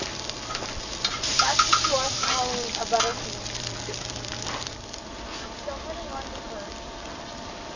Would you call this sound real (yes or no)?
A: no